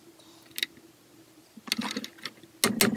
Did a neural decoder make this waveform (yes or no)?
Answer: no